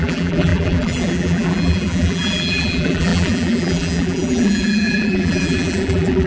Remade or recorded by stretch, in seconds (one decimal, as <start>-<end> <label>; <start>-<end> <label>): 0.0-6.3 remade